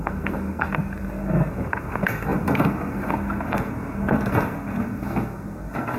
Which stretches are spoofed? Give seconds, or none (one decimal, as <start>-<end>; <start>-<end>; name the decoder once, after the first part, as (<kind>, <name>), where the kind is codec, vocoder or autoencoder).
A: 0.0-6.0 (codec, SNAC)